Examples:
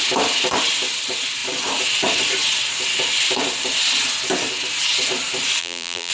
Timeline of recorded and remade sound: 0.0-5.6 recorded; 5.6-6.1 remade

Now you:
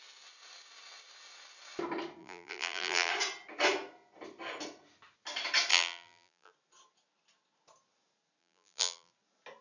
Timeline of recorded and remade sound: 0.0-2.2 recorded; 2.2-3.1 remade; 3.1-5.7 recorded; 5.7-6.5 remade; 6.5-8.4 recorded; 8.4-9.1 remade; 9.1-9.6 recorded